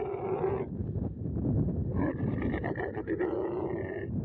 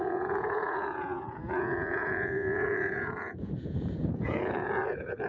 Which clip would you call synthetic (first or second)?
second